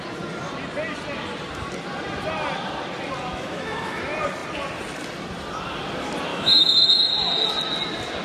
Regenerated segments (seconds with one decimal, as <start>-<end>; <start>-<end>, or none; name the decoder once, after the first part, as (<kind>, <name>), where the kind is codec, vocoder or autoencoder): 3.3-4.0 (autoencoder, DAC-VAE); 6.3-7.1